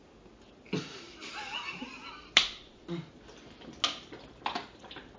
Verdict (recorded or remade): recorded